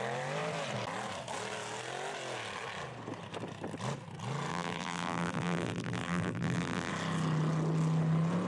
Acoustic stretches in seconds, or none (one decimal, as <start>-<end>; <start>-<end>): 0.0-4.5; 6.9-8.5